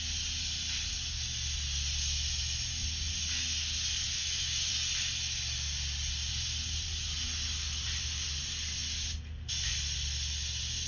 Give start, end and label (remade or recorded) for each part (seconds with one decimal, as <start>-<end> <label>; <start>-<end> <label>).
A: 0.0-4.2 recorded; 4.2-4.7 remade; 4.7-10.9 recorded